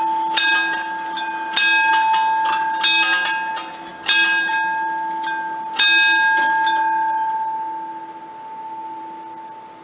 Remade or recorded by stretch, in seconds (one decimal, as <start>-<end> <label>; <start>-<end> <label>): 0.0-9.8 recorded